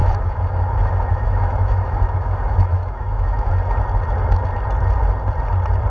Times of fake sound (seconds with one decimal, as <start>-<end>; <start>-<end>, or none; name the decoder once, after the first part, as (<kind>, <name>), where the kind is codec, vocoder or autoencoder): 0.0-3.5 (autoencoder, DAC-VAE)